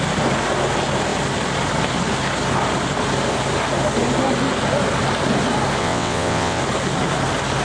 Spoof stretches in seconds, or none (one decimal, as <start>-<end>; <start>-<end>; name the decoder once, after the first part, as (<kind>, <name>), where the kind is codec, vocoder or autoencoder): 5.8-6.6 (vocoder, WaveNeXt)